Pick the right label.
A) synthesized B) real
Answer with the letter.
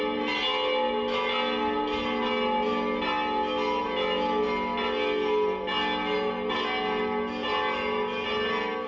B